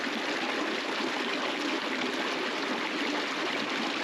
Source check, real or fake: real